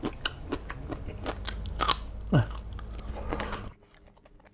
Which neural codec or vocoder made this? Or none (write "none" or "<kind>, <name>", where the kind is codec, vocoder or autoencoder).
none